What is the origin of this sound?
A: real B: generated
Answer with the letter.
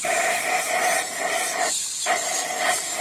A